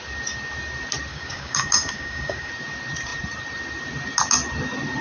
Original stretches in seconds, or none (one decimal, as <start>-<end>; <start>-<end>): 0.0-1.1; 2.5-5.0